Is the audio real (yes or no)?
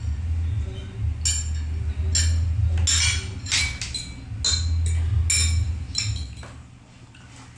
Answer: yes